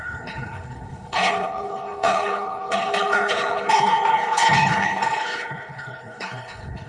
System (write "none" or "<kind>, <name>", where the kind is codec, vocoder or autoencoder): codec, HILCodec